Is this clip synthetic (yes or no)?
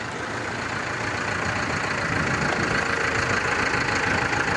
no